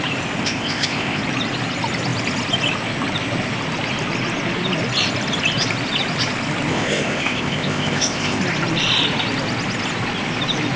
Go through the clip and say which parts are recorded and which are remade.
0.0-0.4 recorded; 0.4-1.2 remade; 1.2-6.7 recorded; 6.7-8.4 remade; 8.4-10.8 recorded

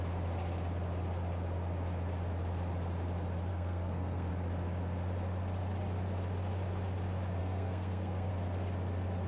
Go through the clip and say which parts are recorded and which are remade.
0.0-3.5 recorded; 3.5-4.3 remade; 4.3-7.4 recorded; 7.4-8.3 remade; 8.3-9.3 recorded